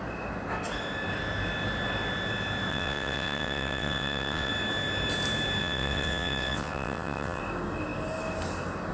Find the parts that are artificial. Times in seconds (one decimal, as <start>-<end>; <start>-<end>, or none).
2.7-4.5; 5.6-7.4

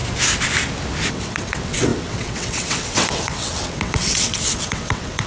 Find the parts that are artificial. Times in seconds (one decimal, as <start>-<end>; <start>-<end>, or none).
1.1-5.3